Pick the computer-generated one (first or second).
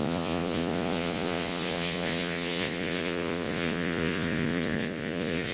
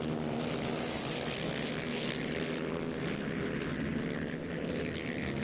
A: first